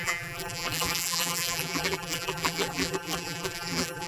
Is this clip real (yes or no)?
no